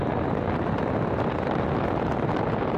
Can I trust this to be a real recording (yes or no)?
yes